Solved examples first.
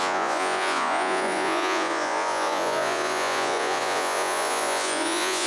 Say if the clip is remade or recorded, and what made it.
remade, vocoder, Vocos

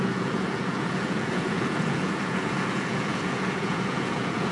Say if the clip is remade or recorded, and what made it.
remade, vocoder, Vocos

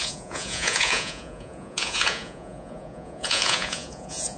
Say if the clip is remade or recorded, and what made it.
remade, vocoder, Vocos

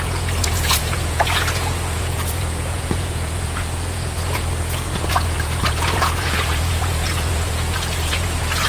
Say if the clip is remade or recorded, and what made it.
remade, vocoder, Vocos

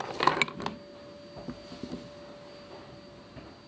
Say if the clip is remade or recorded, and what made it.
recorded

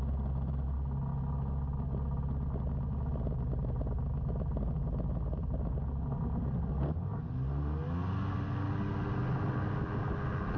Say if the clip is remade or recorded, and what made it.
recorded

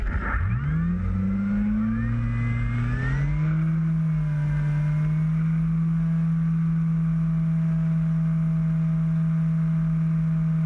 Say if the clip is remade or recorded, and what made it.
recorded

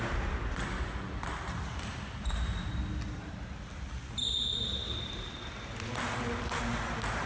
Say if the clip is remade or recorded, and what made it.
recorded